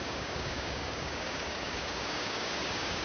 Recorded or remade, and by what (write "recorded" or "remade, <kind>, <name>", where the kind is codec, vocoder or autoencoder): remade, codec, DAC